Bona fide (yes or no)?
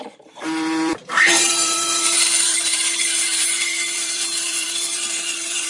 no